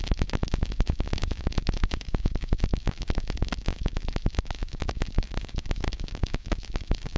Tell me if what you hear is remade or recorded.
remade